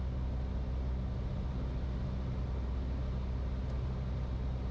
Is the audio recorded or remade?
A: recorded